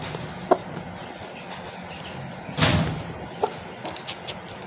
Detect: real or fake real